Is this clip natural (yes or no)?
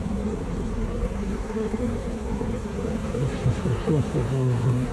no